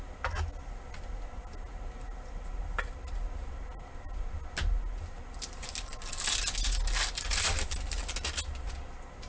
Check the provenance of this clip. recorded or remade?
recorded